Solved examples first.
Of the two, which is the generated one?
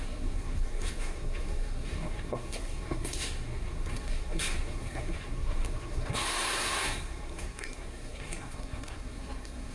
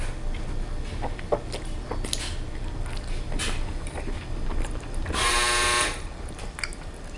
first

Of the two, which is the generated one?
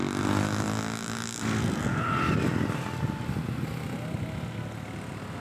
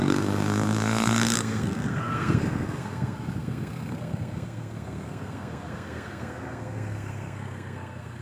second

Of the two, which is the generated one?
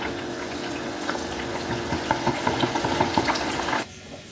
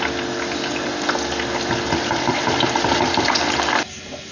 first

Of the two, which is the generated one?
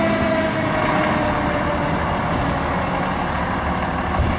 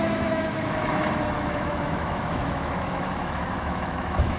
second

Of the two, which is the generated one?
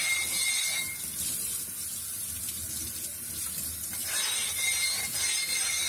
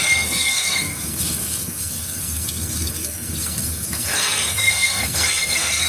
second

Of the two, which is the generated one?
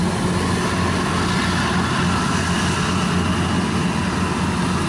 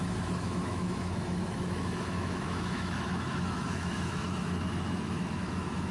second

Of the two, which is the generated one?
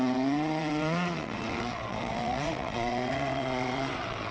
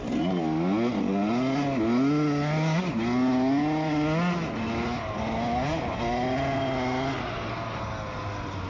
first